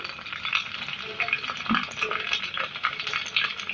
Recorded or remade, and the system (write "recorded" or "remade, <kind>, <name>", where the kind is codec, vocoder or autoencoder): recorded